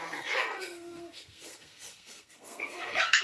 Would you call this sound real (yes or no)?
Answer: no